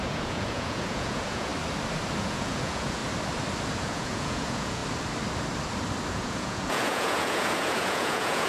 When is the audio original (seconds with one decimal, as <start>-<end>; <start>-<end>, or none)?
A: 1.5-2.2; 3.0-3.7; 4.8-6.1